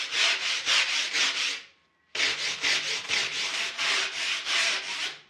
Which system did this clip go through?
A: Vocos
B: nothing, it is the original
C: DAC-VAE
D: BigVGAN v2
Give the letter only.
D